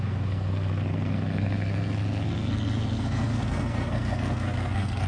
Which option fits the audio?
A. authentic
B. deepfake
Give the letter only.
B